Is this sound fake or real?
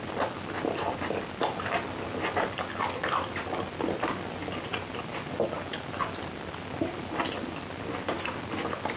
real